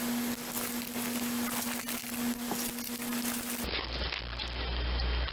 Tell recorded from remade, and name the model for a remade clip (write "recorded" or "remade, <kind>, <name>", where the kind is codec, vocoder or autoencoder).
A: recorded